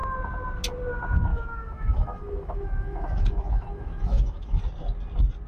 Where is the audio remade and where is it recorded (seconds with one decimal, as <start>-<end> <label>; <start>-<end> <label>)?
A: 0.0-1.3 recorded; 1.3-4.6 remade; 4.6-5.5 recorded